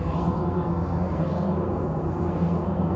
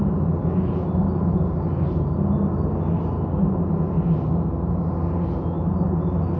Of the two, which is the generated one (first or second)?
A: first